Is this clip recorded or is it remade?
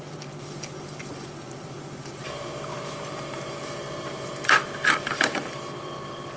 remade